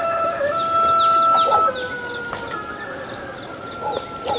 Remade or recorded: recorded